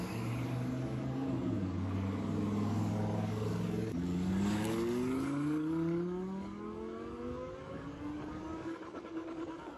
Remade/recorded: remade